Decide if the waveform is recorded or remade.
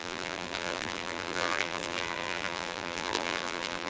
remade